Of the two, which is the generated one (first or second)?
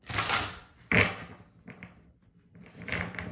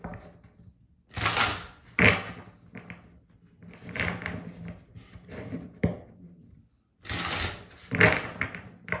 first